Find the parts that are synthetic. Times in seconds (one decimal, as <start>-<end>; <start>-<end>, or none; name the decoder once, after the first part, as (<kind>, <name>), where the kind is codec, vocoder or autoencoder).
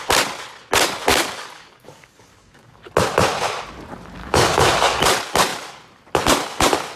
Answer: 1.1-2.9 (codec, DAC); 4.2-5.0